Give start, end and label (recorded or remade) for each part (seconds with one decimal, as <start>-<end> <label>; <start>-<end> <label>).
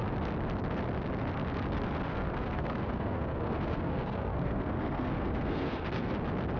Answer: 0.0-2.1 recorded; 2.1-6.1 remade; 6.1-6.6 recorded